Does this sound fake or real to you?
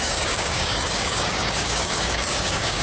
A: fake